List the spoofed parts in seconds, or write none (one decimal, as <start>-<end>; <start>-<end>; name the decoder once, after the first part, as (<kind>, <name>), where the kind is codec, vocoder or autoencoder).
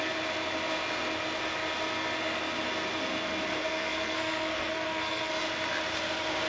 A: 3.6-5.3 (codec, SNAC)